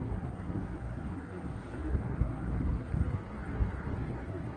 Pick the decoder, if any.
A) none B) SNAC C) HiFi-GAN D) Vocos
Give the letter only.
B